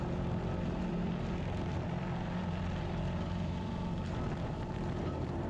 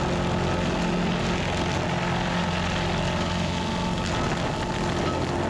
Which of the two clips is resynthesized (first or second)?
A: first